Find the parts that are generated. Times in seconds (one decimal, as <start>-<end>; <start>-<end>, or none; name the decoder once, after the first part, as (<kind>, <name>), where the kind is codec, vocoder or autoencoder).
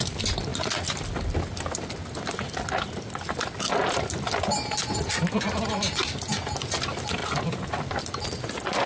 none